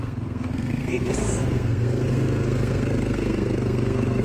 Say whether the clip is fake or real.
fake